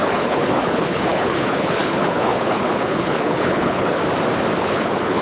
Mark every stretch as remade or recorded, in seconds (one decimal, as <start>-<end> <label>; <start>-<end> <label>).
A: 0.0-4.0 remade; 4.0-4.6 recorded; 4.6-5.2 remade